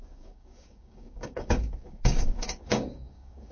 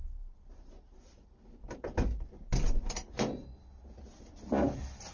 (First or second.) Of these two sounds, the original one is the second